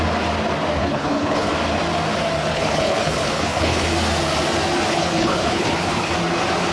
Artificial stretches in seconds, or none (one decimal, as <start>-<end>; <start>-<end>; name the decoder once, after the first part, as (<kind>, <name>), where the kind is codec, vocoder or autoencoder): 0.8-1.5 (codec, HILCodec); 2.5-3.9; 4.9-6.1